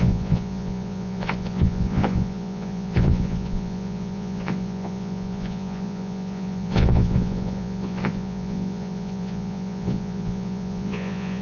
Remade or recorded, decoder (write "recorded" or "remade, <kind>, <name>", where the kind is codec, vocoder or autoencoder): remade, vocoder, Vocos